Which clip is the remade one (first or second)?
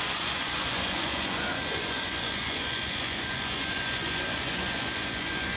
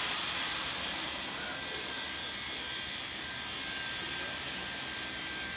first